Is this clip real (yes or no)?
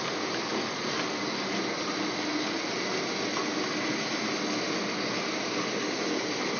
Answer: yes